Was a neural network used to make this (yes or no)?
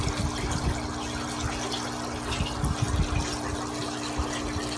no